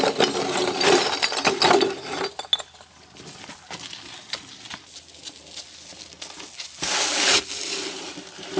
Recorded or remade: recorded